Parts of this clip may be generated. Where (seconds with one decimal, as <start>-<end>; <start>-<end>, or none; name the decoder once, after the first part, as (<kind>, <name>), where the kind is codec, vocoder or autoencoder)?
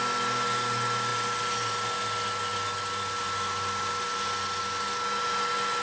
none